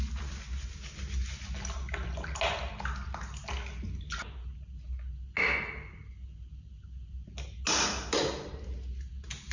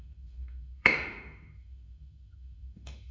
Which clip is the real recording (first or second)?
first